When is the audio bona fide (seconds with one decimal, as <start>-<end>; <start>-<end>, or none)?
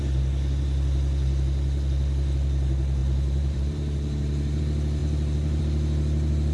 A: 0.0-3.0; 4.6-5.0; 5.6-6.5